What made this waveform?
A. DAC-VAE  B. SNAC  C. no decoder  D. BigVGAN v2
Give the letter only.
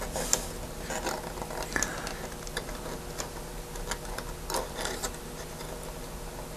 C